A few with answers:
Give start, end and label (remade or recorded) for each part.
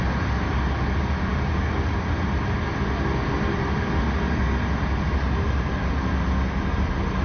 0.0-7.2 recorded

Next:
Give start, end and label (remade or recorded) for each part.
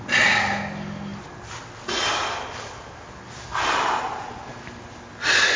0.0-5.6 recorded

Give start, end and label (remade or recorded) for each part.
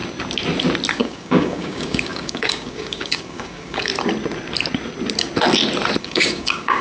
0.0-0.9 recorded; 0.9-3.9 remade; 3.9-6.0 recorded; 6.0-6.8 remade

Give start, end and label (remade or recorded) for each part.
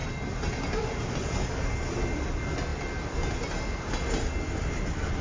0.0-5.2 recorded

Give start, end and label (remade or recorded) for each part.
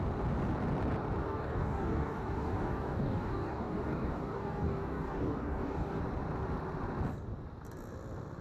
0.0-1.2 recorded; 1.2-6.0 remade; 6.0-8.4 recorded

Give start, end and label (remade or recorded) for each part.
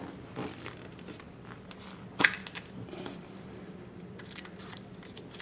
0.0-5.4 recorded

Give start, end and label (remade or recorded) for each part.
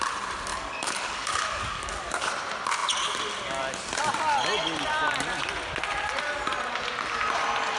0.0-0.5 recorded; 0.5-2.3 remade; 2.3-7.8 recorded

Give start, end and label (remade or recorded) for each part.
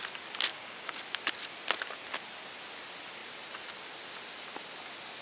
0.0-0.5 recorded; 0.5-1.0 remade; 1.0-5.2 recorded